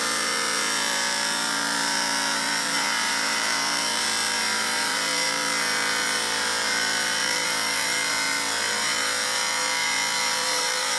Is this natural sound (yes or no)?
no